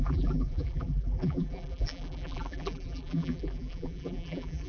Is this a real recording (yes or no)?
no